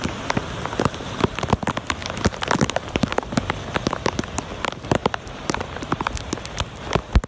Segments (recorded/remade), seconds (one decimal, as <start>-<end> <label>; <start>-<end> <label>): 0.0-2.0 recorded; 2.0-3.5 remade; 3.5-5.0 recorded; 5.0-6.4 remade; 6.4-7.3 recorded